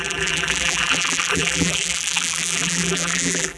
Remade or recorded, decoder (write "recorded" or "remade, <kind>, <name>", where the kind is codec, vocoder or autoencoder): remade, vocoder, BigVGAN v2